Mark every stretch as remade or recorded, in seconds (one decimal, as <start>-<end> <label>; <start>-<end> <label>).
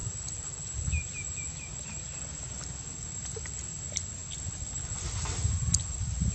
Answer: 0.0-6.3 recorded